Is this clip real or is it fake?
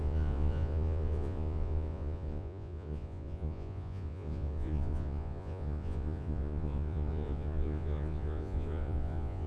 fake